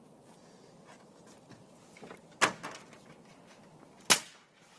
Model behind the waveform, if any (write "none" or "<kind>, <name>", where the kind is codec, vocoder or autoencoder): none